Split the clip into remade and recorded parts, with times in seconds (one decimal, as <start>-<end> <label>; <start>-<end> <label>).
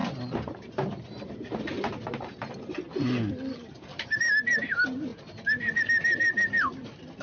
0.0-4.3 remade; 4.3-7.2 recorded